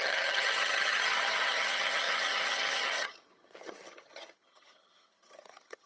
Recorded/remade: remade